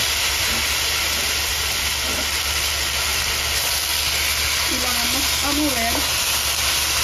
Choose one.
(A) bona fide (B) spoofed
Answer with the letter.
A